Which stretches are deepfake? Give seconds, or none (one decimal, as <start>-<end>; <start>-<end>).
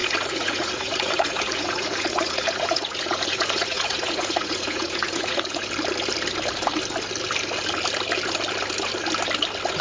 0.0-5.6